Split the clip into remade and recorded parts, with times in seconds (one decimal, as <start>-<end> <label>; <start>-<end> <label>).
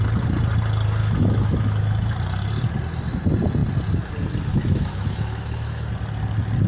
0.0-1.0 recorded; 1.0-1.9 remade; 1.9-4.5 recorded; 4.5-5.9 remade; 5.9-6.7 recorded